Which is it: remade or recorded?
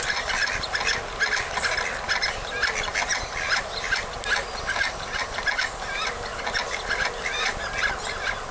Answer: recorded